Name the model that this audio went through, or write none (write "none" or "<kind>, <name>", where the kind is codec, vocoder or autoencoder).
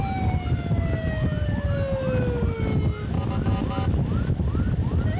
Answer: none